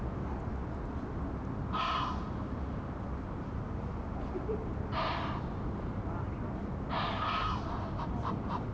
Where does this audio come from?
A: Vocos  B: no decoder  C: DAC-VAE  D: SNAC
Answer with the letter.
B